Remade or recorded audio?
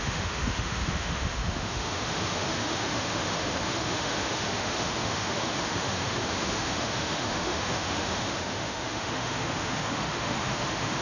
remade